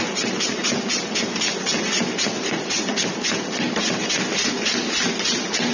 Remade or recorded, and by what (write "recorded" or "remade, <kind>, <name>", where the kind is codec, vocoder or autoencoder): recorded